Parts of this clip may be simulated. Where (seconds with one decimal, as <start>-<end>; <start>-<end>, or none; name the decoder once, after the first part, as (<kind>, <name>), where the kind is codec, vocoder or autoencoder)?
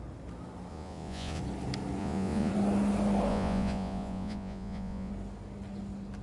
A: 0.7-1.4 (vocoder, Vocos); 2.0-2.5; 3.3-5.1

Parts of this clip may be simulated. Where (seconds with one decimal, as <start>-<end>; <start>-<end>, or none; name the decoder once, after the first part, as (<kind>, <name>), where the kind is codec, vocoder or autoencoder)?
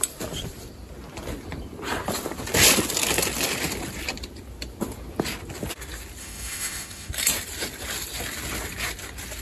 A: 6.2-7.1 (autoencoder, DAC-VAE)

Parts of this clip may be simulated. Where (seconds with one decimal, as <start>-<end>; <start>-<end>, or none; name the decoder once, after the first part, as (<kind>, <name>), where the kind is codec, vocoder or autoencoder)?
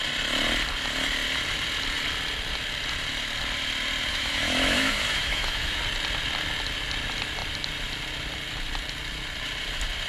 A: 4.1-5.8 (autoencoder, DAC-VAE)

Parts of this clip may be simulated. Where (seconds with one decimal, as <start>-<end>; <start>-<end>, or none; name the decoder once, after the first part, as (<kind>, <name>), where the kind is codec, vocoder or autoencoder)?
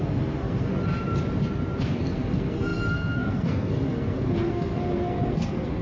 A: 0.0-0.7 (codec, SNAC); 1.8-5.8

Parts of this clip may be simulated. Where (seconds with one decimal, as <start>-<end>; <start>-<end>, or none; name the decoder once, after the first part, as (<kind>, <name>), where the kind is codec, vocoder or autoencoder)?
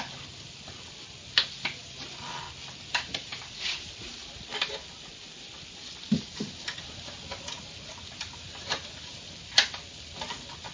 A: none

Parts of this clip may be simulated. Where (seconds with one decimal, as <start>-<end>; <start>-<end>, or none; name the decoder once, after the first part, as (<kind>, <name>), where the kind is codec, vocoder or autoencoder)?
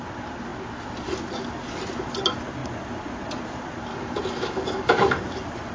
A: 3.9-5.2 (autoencoder, DAC-VAE)